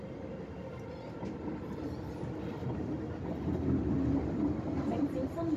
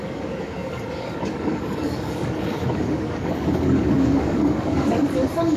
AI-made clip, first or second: second